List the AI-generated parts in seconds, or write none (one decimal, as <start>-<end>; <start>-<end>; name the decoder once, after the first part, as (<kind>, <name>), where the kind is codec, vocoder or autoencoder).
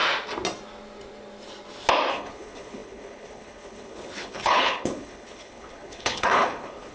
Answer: 2.1-6.9 (codec, HILCodec)